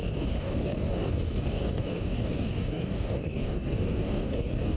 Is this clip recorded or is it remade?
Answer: remade